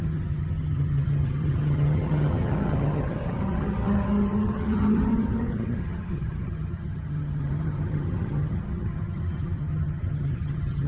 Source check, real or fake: fake